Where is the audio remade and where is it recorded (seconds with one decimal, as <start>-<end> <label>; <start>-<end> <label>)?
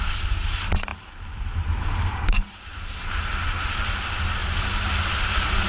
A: 0.0-4.4 remade; 4.4-5.1 recorded; 5.1-5.7 remade